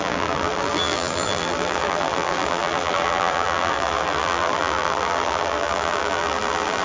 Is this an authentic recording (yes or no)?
no